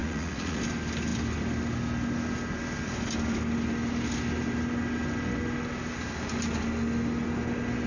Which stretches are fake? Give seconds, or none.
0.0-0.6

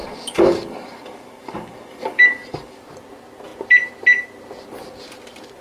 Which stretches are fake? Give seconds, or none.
0.0-2.8

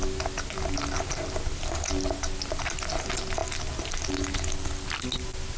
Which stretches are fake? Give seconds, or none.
none

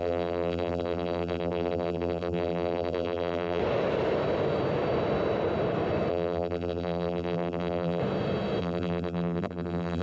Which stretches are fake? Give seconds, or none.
0.0-3.6; 6.1-8.0; 8.6-10.0